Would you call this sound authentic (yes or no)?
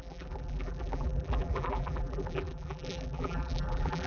no